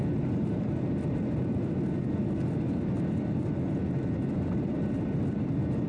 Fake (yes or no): no